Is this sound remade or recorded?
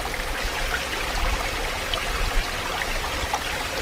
recorded